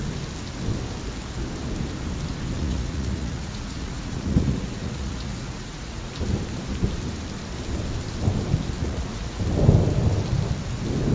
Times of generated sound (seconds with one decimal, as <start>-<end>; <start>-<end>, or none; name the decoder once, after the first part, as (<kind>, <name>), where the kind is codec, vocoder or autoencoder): 2.6-6.1 (vocoder, Vocos); 8.8-9.4